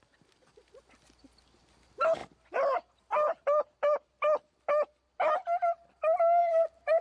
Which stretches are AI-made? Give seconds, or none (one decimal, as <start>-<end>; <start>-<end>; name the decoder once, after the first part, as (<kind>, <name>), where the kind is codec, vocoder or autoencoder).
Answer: none